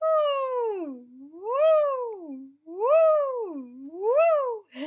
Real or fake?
real